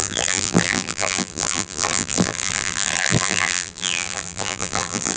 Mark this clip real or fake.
fake